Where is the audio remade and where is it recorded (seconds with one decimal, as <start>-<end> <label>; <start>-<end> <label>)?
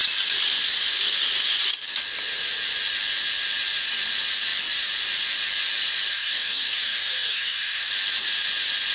0.0-6.1 recorded; 6.1-7.9 remade; 7.9-8.9 recorded